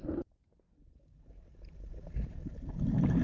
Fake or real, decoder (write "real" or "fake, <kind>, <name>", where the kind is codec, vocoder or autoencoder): real